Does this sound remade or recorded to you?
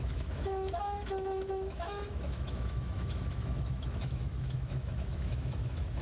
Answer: remade